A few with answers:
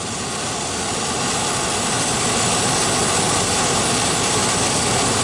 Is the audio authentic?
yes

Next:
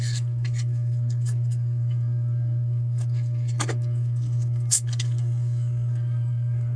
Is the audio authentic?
no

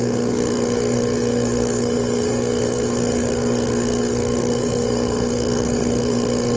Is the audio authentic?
no